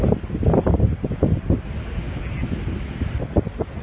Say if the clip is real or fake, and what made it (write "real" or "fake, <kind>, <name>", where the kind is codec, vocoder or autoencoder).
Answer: real